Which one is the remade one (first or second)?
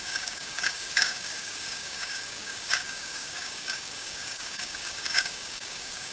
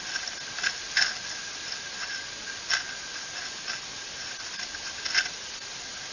first